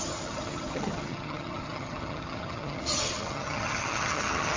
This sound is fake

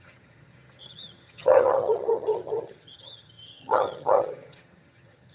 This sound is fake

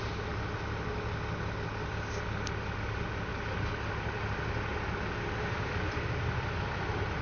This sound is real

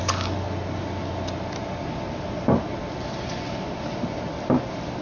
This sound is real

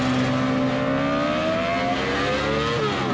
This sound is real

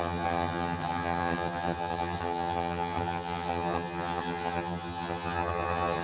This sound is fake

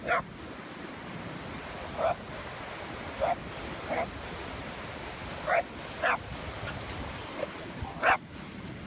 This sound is real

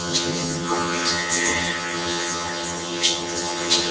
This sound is fake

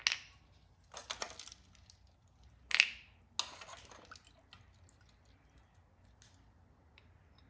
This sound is real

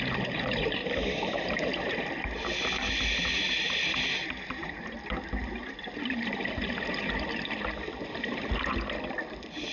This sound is real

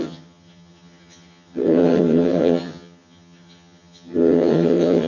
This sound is fake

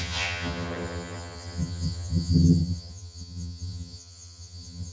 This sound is fake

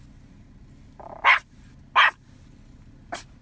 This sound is real